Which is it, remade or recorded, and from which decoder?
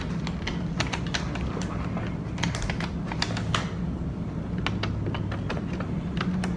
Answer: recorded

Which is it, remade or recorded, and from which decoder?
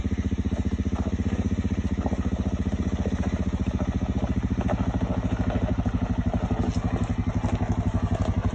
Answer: recorded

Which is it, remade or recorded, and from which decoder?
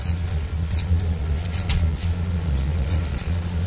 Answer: remade, vocoder, Vocos